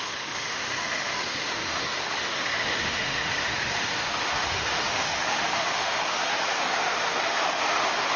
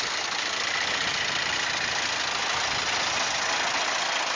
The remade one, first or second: first